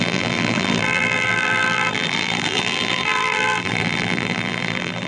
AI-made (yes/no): yes